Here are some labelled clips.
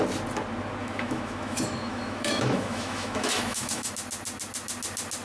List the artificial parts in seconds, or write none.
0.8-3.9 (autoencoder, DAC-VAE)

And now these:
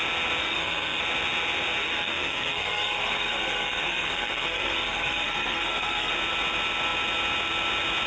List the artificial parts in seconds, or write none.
0.4-1.0 (codec, SNAC); 1.8-6.1

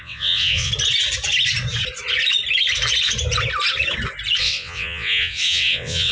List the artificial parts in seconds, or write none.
0.0-0.7 (vocoder, WaveNeXt); 4.4-6.1

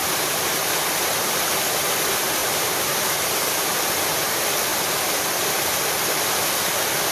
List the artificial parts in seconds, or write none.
0.0-1.0 (vocoder, BigVGAN v2); 2.4-3.4

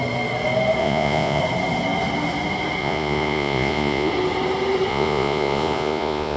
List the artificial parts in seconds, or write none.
0.8-1.4 (vocoder, Vocos); 2.8-4.1; 4.9-6.4

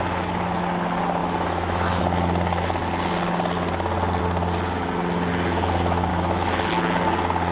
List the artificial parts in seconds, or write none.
1.2-2.0 (autoencoder, DAC-VAE); 6.1-6.7

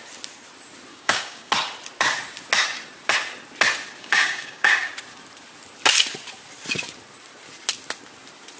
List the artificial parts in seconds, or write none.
0.9-1.5 (codec, DAC); 4.0-4.9